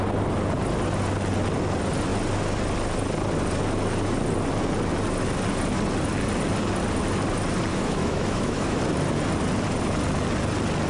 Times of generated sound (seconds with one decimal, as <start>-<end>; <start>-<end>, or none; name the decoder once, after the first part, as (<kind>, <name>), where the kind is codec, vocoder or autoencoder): 7.7-8.8 (autoencoder, DAC-VAE)